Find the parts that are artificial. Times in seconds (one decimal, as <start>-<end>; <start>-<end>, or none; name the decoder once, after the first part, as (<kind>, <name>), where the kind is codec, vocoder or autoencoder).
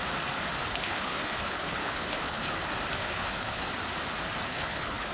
0.6-2.5 (codec, HILCodec); 3.0-3.7; 4.5-5.1